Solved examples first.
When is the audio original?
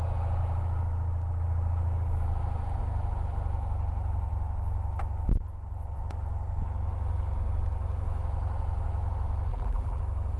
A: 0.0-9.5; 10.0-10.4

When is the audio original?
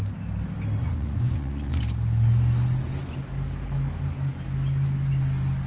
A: 0.0-0.8; 1.8-5.7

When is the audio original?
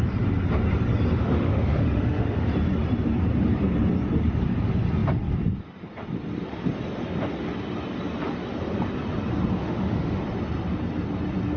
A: 0.0-1.2; 2.5-9.6; 10.2-11.6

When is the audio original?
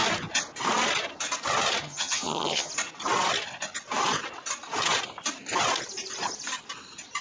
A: 0.0-1.8; 2.7-7.2